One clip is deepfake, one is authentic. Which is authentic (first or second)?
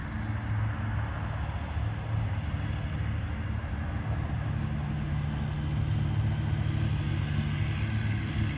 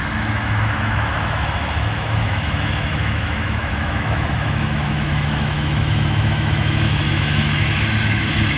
first